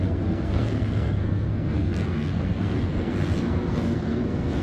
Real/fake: fake